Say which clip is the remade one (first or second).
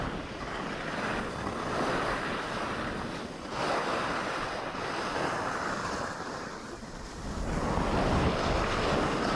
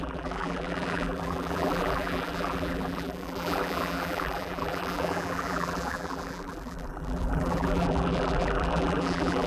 second